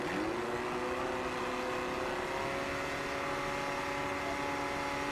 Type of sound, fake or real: real